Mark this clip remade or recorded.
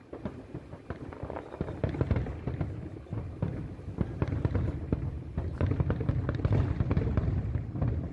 recorded